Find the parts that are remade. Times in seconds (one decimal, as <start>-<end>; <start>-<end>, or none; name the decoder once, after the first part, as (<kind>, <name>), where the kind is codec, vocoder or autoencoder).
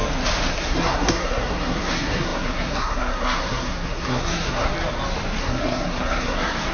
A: 0.5-4.7 (codec, SNAC); 5.4-6.7